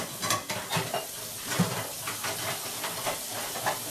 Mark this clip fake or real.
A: real